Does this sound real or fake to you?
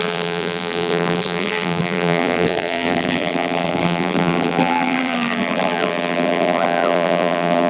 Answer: fake